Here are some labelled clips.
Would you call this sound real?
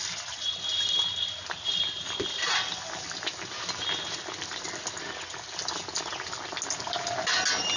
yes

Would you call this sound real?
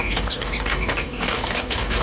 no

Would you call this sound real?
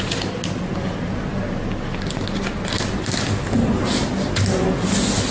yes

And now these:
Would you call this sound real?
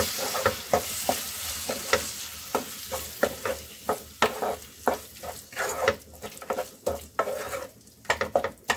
yes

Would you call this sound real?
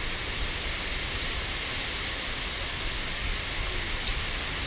yes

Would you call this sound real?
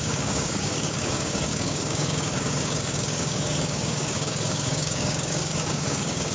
no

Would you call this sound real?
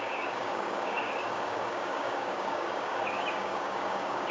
no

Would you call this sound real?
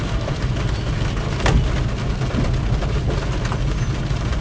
yes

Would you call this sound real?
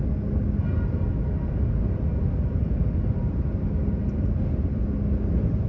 yes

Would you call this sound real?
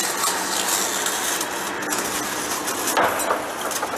yes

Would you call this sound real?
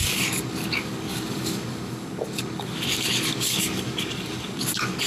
no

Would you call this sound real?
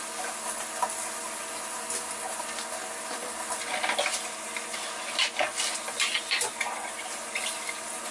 yes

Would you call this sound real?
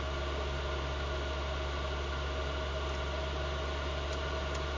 yes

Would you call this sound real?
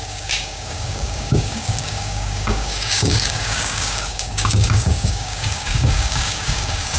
no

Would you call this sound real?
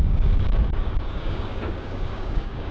no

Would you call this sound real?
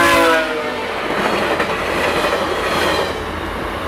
yes